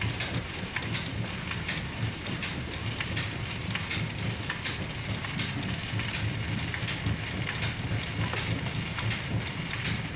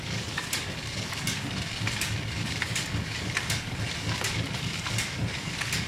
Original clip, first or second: first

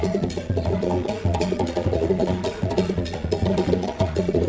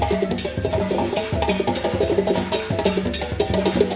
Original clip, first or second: second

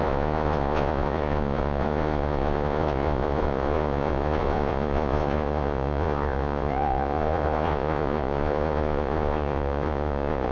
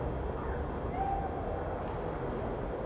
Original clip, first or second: second